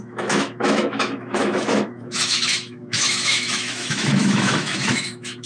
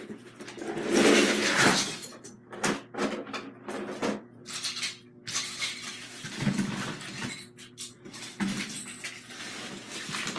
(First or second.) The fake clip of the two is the first